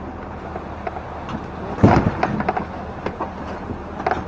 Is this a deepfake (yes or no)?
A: no